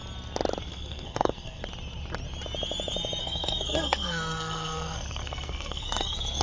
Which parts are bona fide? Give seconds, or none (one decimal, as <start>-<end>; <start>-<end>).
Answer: 0.0-0.6; 1.6-3.2